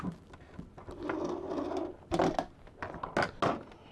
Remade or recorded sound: recorded